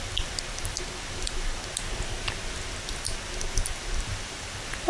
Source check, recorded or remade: recorded